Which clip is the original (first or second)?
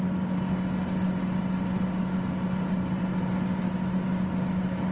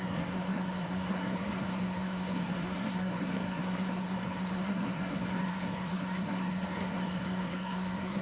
first